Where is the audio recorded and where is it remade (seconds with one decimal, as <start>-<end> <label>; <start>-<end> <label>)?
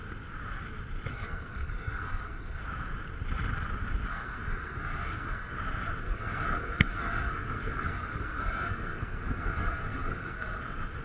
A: 0.0-1.1 recorded; 1.1-2.6 remade; 2.6-4.1 recorded; 4.1-5.5 remade; 5.5-6.0 recorded; 6.0-10.6 remade; 10.6-11.0 recorded